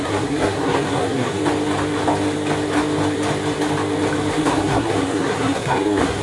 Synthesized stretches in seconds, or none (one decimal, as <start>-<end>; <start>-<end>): 0.0-1.4; 4.3-6.2